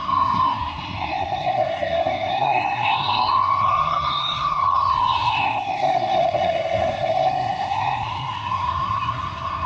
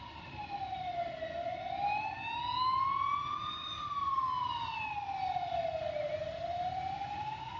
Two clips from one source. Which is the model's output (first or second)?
first